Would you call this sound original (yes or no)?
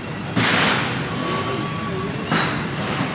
yes